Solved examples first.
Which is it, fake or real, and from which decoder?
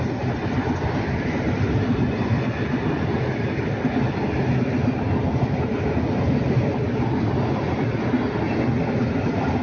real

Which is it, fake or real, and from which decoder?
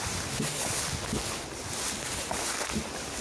real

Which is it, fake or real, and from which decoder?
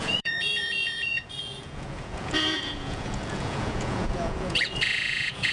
fake, vocoder, Vocos